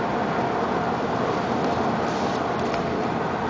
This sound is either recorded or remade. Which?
recorded